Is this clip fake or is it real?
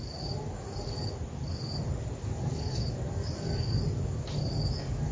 real